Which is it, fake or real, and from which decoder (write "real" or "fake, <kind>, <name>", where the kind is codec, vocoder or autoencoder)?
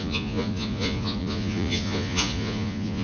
fake, vocoder, Vocos